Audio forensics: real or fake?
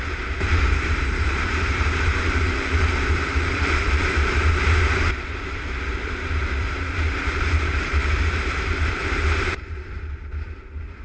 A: fake